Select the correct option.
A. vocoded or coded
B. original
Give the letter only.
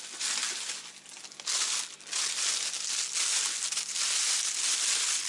B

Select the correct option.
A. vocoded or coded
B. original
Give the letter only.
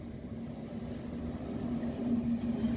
B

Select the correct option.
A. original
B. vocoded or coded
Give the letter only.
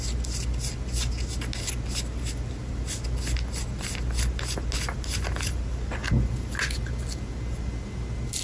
A